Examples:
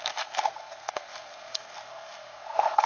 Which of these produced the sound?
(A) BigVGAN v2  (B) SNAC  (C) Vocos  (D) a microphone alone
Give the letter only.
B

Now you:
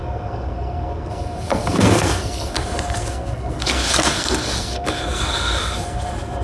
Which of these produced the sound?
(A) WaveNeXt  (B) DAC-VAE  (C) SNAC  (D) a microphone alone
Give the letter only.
C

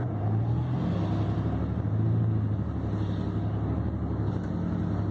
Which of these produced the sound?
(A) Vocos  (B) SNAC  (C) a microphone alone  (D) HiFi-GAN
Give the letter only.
C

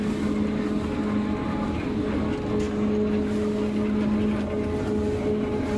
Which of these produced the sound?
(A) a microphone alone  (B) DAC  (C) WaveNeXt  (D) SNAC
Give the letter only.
A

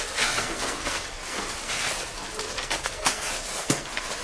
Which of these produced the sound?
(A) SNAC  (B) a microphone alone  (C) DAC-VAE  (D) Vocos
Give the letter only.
A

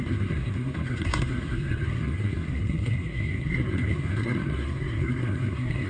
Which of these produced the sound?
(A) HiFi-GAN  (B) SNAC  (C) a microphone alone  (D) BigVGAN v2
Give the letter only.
B